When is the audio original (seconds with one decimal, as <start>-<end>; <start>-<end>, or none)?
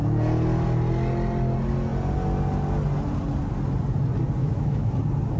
0.0-4.4; 4.9-5.4